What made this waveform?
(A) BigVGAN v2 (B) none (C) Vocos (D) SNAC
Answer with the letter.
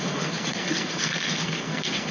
D